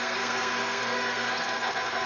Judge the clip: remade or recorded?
remade